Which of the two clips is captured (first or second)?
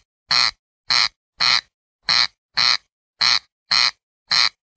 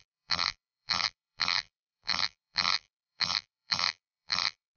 first